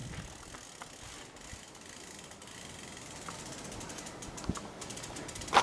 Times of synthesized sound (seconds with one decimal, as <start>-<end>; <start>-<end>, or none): none